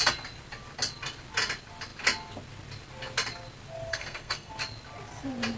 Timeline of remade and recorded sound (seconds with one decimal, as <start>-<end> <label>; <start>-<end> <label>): 0.0-3.9 recorded; 3.9-4.5 remade; 4.5-5.6 recorded